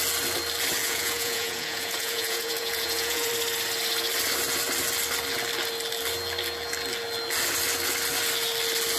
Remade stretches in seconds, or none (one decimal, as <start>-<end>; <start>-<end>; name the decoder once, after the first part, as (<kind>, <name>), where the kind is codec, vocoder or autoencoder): 0.8-3.3 (vocoder, Vocos)